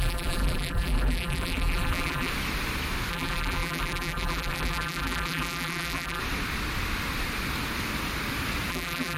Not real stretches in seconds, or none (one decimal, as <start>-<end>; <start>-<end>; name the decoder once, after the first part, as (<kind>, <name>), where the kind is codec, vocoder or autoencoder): 0.0-2.3 (vocoder, BigVGAN v2); 3.1-6.2; 8.7-9.2